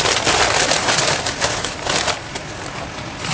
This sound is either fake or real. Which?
real